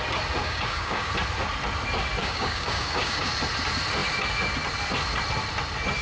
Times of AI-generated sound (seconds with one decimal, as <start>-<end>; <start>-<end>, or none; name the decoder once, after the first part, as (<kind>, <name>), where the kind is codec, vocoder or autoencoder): 0.4-1.1 (codec, DAC); 2.2-3.3